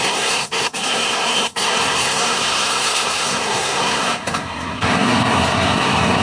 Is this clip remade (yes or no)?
yes